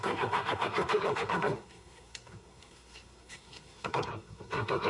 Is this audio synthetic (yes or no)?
yes